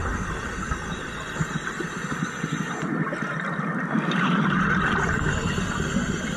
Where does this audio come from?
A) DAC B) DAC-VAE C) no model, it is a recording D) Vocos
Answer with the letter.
C